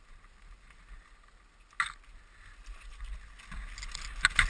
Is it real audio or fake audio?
real